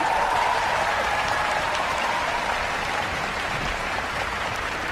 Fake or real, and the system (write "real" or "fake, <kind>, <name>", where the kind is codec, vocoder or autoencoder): fake, vocoder, BigVGAN v2